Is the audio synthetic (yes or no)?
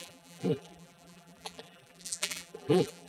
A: yes